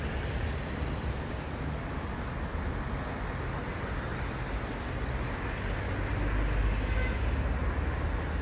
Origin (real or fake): real